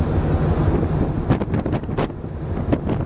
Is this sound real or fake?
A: real